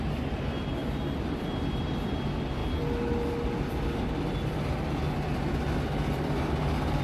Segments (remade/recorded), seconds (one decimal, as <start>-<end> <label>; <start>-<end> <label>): 0.0-2.6 remade; 2.6-7.0 recorded